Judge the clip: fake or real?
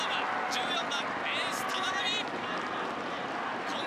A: real